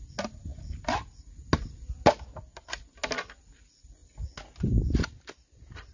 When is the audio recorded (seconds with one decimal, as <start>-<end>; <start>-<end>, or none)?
0.0-5.9